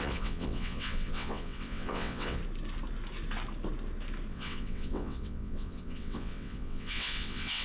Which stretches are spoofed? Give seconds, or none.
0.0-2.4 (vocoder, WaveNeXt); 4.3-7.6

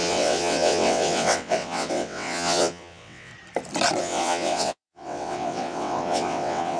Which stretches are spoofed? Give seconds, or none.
0.0-3.3 (vocoder, WaveNeXt); 4.0-6.8

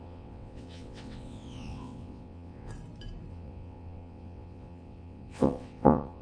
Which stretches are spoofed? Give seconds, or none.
0.0-2.7 (vocoder, WaveNeXt); 3.3-6.2

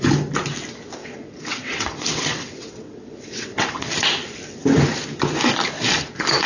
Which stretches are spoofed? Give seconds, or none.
1.0-3.9 (vocoder, WaveNeXt)